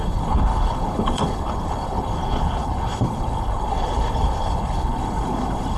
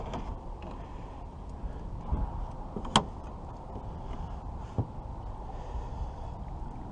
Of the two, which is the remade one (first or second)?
first